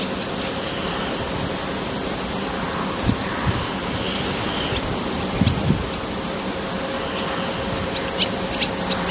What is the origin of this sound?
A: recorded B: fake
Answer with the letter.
A